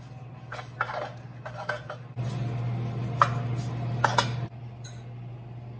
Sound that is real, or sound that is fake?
real